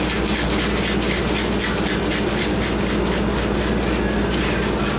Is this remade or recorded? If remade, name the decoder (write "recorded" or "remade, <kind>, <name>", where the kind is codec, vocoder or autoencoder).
recorded